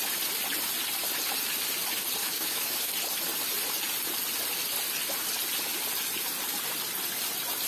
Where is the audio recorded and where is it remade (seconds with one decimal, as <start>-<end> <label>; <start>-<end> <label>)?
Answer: 0.0-2.2 recorded; 2.2-2.9 remade; 2.9-7.7 recorded